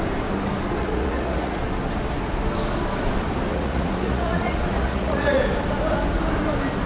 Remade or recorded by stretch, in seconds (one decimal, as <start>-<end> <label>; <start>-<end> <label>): 0.0-0.8 recorded; 0.8-1.6 remade; 1.6-3.5 recorded; 3.5-5.4 remade; 5.4-6.9 recorded